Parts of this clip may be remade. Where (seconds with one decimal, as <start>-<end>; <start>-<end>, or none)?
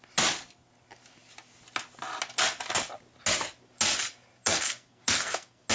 4.4-5.7